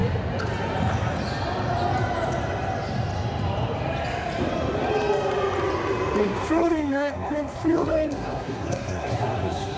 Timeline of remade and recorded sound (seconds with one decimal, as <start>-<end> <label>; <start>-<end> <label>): 0.0-6.2 recorded; 6.2-9.8 remade